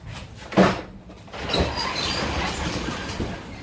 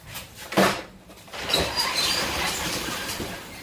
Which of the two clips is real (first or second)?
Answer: first